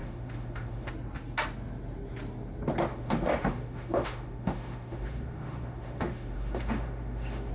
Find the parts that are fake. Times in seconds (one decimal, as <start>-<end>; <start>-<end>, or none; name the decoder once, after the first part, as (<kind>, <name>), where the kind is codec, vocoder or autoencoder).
0.0-0.9 (autoencoder, DAC-VAE); 2.9-7.5